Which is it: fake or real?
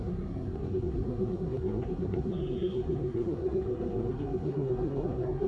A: fake